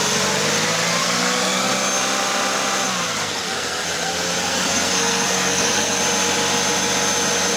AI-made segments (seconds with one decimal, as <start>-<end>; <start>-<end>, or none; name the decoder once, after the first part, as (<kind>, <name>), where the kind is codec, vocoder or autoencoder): 1.0-1.7 (codec, SNAC); 3.1-6.0